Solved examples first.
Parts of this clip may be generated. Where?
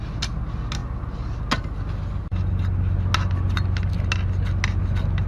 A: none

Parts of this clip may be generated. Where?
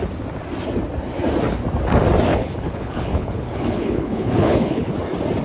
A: 2.3-4.9 (codec, HILCodec)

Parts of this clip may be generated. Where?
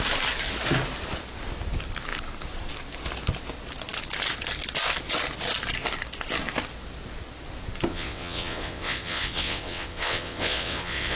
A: 7.9-11.2 (vocoder, WaveNeXt)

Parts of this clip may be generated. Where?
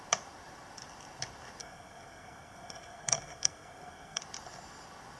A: 1.6-4.2 (codec, SNAC)